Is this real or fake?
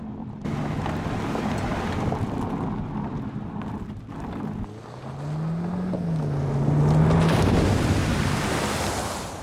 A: real